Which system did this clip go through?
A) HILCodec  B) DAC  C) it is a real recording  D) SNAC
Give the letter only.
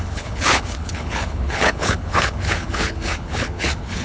A